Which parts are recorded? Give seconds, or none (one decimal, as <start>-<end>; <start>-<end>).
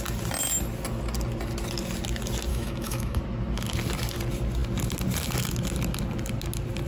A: 0.0-2.5; 3.2-6.9